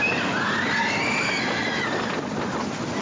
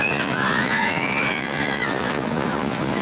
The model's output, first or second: second